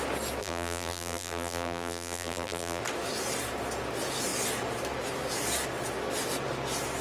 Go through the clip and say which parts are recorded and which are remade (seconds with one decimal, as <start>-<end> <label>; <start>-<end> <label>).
0.0-0.4 recorded; 0.4-2.8 remade; 2.8-7.0 recorded

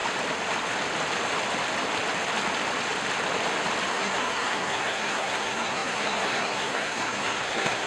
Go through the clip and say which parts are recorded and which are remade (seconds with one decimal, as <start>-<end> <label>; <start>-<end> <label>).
0.0-3.9 recorded; 3.9-7.9 remade

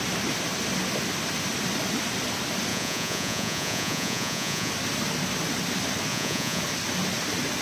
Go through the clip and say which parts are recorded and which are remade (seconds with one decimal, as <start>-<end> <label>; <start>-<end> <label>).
0.0-2.7 recorded; 2.7-4.7 remade; 4.7-6.1 recorded; 6.1-6.6 remade; 6.6-7.6 recorded

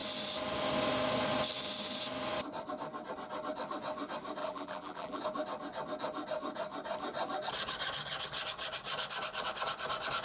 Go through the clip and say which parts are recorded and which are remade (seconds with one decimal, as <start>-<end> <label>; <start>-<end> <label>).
0.0-4.4 recorded; 4.4-5.2 remade; 5.2-10.2 recorded